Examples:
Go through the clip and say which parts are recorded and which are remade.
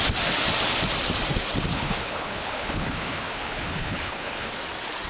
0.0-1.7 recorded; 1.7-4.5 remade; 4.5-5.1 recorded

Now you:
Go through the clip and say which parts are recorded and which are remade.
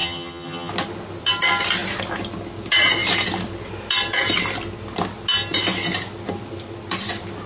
0.0-0.7 remade; 0.7-7.5 recorded